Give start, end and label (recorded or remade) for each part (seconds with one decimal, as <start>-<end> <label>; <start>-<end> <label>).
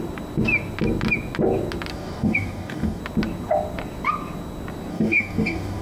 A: 0.0-1.9 recorded; 1.9-3.0 remade; 3.0-4.9 recorded; 4.9-5.8 remade